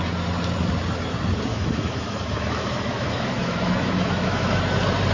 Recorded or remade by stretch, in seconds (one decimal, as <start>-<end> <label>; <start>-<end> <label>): 0.0-1.5 recorded; 1.5-4.6 remade; 4.6-5.1 recorded